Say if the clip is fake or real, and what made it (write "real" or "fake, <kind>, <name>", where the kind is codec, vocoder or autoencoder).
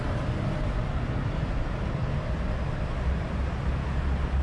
real